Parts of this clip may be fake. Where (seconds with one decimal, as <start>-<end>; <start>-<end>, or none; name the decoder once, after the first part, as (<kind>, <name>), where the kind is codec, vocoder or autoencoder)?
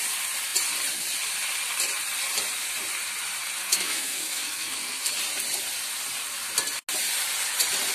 3.6-5.1 (codec, SNAC)